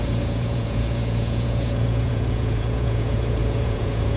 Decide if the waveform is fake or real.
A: fake